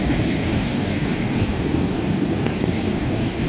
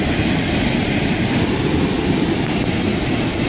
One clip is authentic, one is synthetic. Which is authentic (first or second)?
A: second